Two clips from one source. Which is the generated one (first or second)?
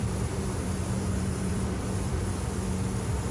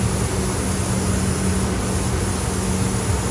first